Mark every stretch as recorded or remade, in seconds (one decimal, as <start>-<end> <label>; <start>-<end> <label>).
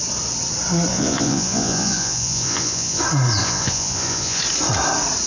0.0-0.9 recorded; 0.9-3.0 remade; 3.0-3.4 recorded; 3.4-4.4 remade; 4.4-5.3 recorded